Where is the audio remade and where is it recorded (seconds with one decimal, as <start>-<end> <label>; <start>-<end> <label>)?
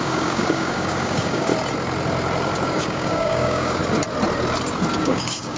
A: 0.0-1.5 remade; 1.5-2.6 recorded; 2.6-3.8 remade; 3.8-5.0 recorded; 5.0-5.6 remade